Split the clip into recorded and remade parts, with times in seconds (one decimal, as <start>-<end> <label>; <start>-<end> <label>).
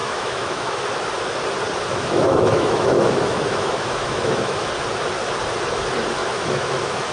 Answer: 0.0-0.8 remade; 0.8-1.9 recorded; 1.9-4.7 remade; 4.7-6.2 recorded; 6.2-7.1 remade